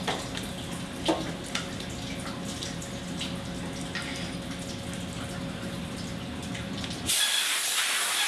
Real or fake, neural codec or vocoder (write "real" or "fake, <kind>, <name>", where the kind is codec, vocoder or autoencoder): real